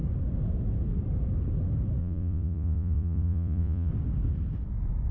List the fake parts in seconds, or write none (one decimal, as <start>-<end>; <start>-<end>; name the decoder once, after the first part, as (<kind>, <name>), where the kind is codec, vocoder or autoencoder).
2.0-3.9 (vocoder, Vocos)